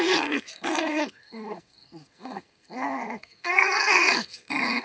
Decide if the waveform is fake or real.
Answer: fake